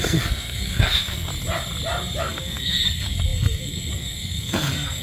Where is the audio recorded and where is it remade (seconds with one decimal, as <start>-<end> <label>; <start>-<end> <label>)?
0.0-1.3 remade; 1.3-2.2 recorded; 2.2-5.0 remade

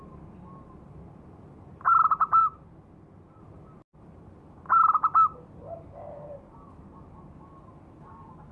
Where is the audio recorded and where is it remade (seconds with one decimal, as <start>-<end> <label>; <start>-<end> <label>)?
0.0-8.5 recorded

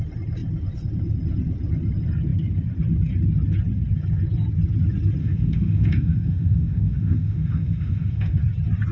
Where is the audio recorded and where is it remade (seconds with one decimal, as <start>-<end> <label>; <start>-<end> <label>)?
0.0-5.2 recorded; 5.2-8.4 remade; 8.4-8.9 recorded

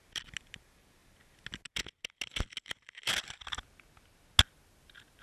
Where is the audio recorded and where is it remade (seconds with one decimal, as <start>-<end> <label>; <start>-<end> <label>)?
0.0-5.2 recorded

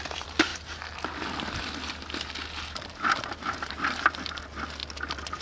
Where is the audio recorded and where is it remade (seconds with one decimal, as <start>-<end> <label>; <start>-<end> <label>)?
0.0-5.4 recorded

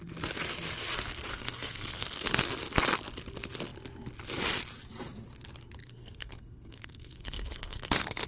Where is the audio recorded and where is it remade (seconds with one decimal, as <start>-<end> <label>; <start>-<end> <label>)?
0.0-1.3 recorded; 1.3-2.4 remade; 2.4-5.8 recorded; 5.8-8.3 remade

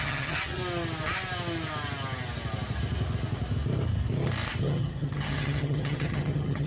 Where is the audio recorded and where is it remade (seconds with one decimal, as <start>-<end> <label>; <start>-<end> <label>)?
0.0-0.6 remade; 0.6-4.6 recorded; 4.6-6.7 remade